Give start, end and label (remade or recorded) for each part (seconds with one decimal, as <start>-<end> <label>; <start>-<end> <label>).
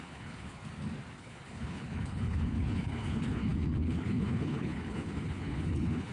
0.0-0.6 remade; 0.6-1.2 recorded; 1.2-6.1 remade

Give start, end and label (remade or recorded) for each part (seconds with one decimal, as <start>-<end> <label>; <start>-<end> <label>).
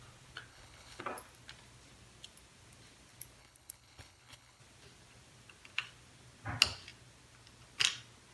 0.0-0.5 recorded; 0.5-1.0 remade; 1.0-3.4 recorded; 3.4-4.6 remade; 4.6-8.3 recorded